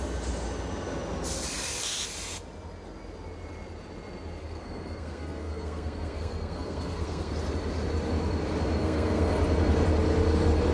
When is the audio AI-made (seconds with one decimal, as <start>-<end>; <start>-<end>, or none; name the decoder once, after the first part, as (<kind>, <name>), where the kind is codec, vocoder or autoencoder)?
4.4-7.3 (codec, SNAC); 8.8-9.3